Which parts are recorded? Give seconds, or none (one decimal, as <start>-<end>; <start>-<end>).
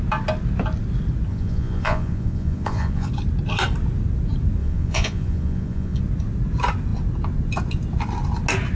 0.0-1.3; 3.1-4.6; 6.0-8.7